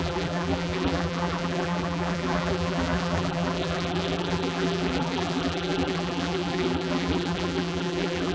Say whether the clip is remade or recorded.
remade